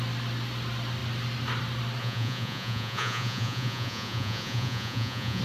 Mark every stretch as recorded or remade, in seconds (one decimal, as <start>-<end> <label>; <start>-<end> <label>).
0.0-2.0 recorded; 2.0-5.4 remade